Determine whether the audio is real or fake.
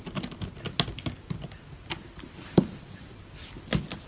real